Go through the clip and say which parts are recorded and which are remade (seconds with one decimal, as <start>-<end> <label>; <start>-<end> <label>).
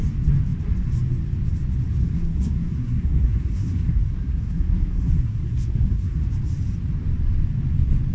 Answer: 0.0-2.0 recorded; 2.0-6.2 remade; 6.2-8.1 recorded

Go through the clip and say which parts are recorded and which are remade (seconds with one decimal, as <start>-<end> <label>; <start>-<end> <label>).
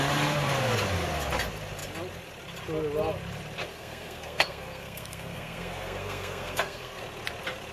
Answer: 0.0-3.7 recorded; 3.7-7.0 remade; 7.0-7.7 recorded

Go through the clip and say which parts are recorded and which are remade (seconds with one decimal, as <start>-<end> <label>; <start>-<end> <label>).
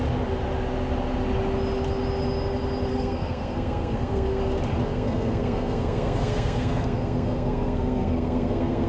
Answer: 0.0-2.9 recorded; 2.9-4.4 remade; 4.4-4.9 recorded; 4.9-8.9 remade